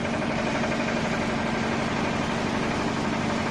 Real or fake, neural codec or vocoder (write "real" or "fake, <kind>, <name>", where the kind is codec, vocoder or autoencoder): real